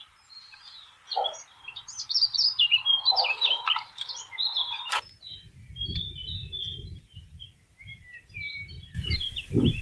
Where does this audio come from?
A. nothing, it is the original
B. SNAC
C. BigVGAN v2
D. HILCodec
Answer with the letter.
C